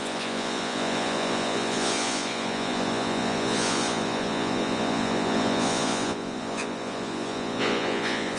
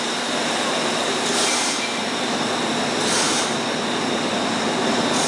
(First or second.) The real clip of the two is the second